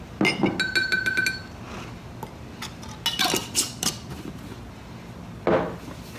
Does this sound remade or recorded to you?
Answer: recorded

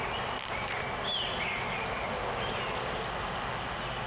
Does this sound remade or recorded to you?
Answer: recorded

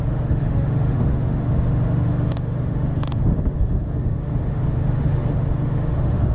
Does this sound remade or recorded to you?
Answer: remade